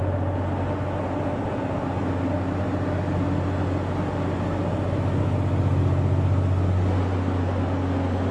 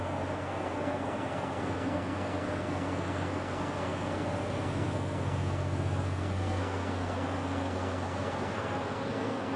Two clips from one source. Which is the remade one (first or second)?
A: second